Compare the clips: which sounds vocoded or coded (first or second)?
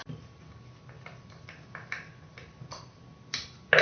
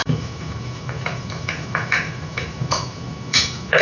second